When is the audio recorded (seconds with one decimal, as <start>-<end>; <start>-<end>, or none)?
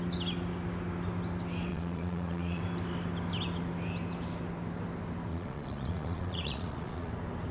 0.0-1.7; 2.6-5.3; 7.1-7.5